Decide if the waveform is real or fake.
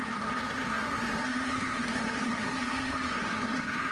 fake